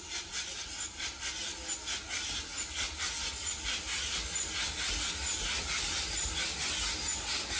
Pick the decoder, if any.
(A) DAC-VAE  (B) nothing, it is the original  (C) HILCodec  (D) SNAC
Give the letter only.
B